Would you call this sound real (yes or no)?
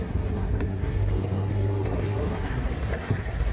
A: no